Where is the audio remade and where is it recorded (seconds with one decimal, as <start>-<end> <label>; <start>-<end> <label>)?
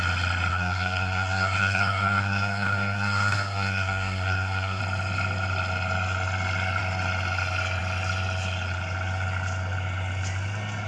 0.0-0.5 recorded; 0.5-4.8 remade; 4.8-10.9 recorded